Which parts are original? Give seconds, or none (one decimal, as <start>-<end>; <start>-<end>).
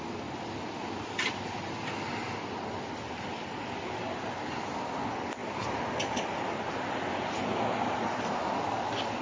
0.0-5.4; 6.3-9.2